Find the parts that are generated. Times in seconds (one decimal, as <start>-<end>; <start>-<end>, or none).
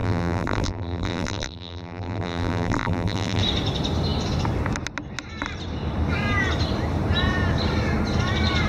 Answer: 0.0-3.4